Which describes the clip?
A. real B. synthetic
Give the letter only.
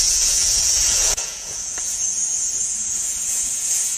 B